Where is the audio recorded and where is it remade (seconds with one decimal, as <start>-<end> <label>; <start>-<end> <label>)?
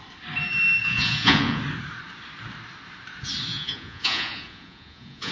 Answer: 0.0-0.8 recorded; 0.8-1.6 remade; 1.6-3.5 recorded; 3.5-5.3 remade